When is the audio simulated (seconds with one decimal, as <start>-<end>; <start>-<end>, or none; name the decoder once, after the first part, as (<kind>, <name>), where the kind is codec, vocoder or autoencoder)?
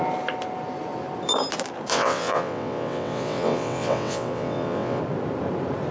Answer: 1.9-5.0 (vocoder, WaveNeXt)